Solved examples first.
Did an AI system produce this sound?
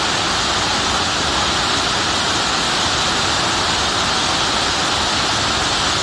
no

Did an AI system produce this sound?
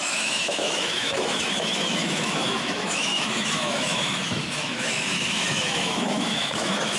yes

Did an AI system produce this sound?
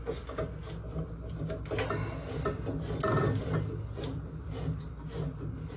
no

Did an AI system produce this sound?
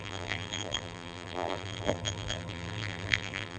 yes